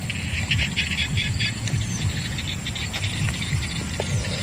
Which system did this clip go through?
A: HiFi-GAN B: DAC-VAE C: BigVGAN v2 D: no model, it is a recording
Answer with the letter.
D